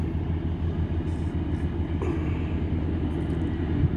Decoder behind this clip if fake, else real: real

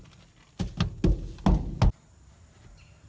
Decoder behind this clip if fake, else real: real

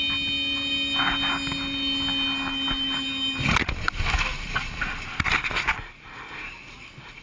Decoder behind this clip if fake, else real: real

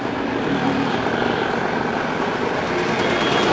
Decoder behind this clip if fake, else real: real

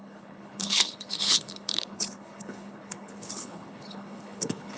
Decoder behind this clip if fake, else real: fake, codec, HILCodec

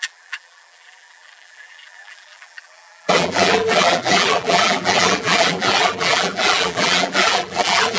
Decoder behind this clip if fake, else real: fake, vocoder, BigVGAN v2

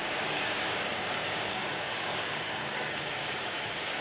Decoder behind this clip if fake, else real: fake, codec, DAC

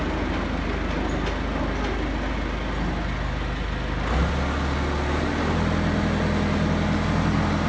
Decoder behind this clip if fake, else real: real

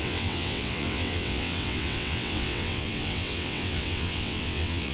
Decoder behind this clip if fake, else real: fake, vocoder, WaveNeXt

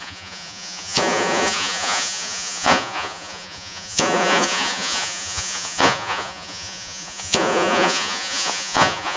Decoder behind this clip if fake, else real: fake, vocoder, Vocos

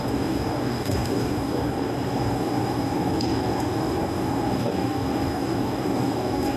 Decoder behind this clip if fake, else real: fake, codec, DAC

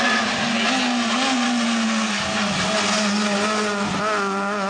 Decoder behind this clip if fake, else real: real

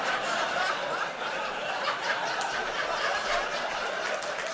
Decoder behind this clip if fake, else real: fake, vocoder, BigVGAN v2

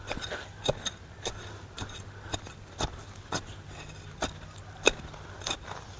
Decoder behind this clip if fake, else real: real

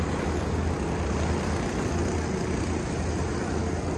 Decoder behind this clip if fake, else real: real